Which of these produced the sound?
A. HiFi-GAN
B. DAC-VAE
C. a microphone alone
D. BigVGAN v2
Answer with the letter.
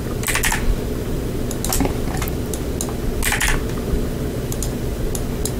C